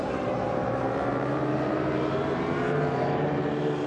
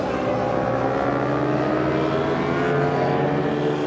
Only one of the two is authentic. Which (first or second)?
second